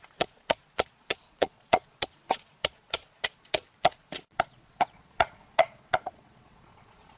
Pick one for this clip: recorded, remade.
remade